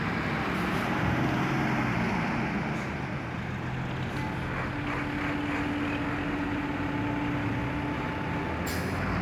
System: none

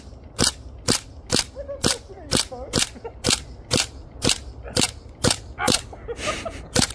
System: none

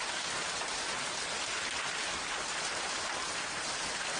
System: none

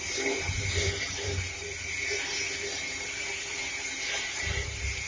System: vocoder, BigVGAN v2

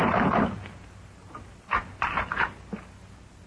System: none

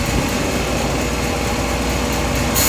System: none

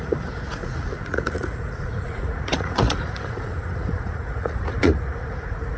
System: vocoder, Vocos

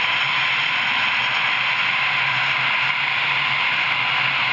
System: none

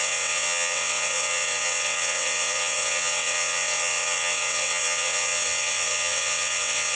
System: vocoder, WaveNeXt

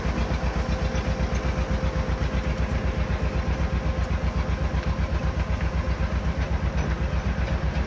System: none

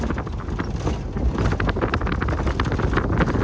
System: none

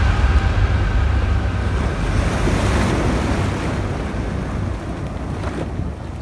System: none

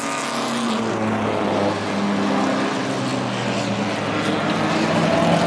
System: none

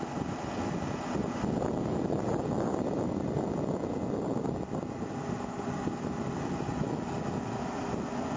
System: none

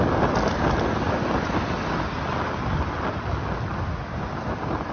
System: none